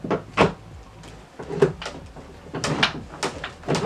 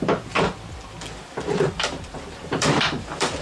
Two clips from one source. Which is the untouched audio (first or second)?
first